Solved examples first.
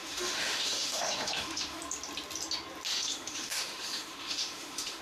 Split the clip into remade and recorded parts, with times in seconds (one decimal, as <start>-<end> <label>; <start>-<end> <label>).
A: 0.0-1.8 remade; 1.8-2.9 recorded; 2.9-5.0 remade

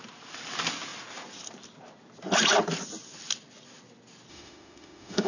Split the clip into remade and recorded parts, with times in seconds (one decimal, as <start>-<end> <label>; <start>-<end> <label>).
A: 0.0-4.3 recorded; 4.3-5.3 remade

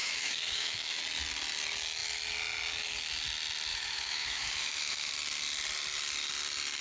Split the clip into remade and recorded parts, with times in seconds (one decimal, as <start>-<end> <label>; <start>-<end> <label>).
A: 0.0-1.0 remade; 1.0-3.7 recorded; 3.7-5.1 remade; 5.1-6.8 recorded

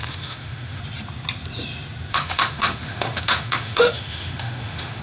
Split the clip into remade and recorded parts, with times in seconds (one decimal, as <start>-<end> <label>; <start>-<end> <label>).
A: 0.0-0.8 remade; 0.8-2.1 recorded; 2.1-5.0 remade

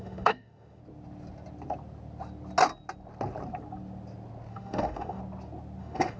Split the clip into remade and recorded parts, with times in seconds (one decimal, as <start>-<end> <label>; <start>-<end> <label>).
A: 0.0-0.8 remade; 0.8-4.5 recorded; 4.5-5.2 remade; 5.2-5.8 recorded; 5.8-6.2 remade

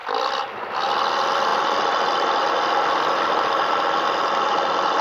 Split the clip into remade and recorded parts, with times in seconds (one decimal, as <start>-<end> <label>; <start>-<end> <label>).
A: 0.0-5.0 recorded